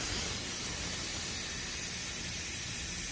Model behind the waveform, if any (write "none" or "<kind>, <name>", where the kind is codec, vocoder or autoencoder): none